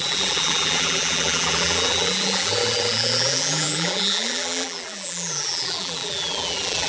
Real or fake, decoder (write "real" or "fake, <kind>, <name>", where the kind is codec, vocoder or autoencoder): fake, vocoder, BigVGAN v2